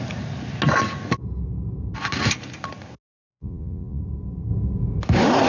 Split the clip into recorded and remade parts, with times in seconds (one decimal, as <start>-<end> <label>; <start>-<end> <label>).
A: 0.0-3.3 recorded; 3.3-4.0 remade; 4.0-5.5 recorded